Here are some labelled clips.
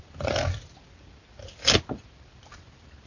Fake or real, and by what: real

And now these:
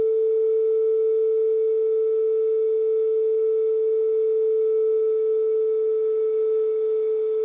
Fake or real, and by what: real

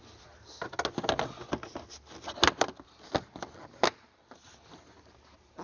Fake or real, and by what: real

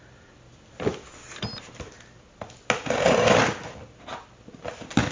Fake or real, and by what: real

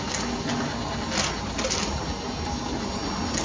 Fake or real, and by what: real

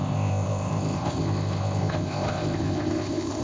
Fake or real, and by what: fake, codec, ZipCodec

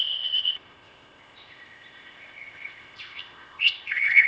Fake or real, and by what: fake, codec, ZipCodec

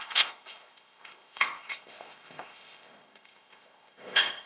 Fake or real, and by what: fake, codec, ZipCodec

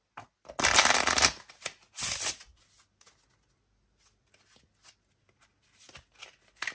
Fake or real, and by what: real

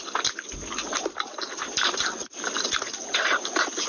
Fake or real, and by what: real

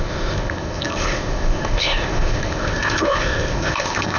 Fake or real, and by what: fake, codec, ZipCodec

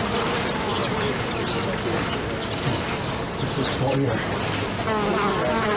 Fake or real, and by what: real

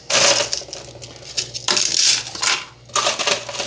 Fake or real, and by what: real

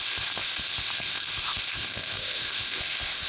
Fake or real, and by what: fake, codec, ZipCodec